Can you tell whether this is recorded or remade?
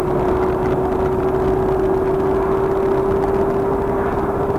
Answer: recorded